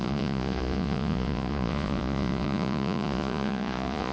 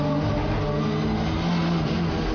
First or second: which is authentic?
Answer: second